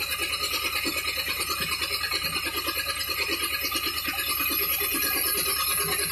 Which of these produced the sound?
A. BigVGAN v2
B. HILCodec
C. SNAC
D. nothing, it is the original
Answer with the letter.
D